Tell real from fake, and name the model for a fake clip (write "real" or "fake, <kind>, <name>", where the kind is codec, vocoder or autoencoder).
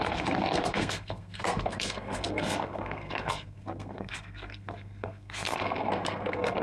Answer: fake, codec, SNAC